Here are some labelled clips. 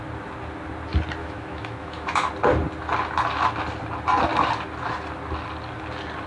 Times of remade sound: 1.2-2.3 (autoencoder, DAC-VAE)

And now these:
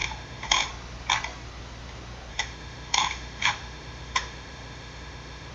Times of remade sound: 0.0-0.7 (autoencoder, DAC-VAE); 2.3-5.5

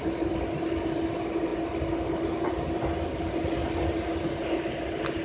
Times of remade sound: none

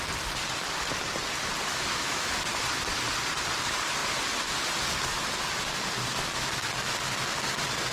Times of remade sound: 1.7-2.4 (autoencoder, DAC-VAE)

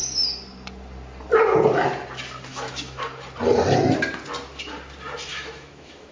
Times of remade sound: 2.5-3.0 (autoencoder, DAC-VAE); 5.3-6.1

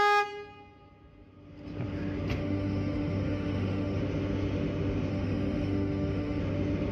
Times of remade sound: 2.4-4.0 (autoencoder, DAC-VAE); 5.1-6.4

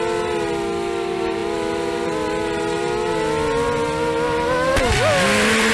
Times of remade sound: none